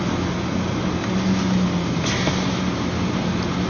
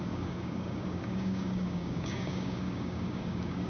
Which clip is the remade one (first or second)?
second